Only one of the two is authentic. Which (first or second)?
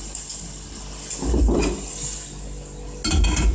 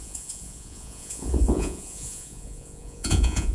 first